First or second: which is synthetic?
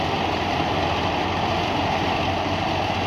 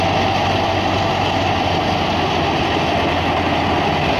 first